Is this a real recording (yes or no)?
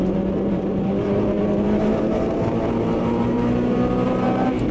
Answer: no